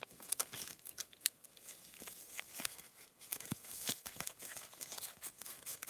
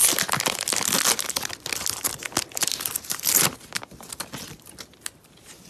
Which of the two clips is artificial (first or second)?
first